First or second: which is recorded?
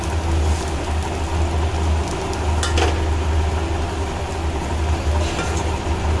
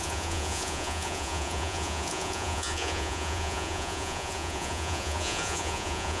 first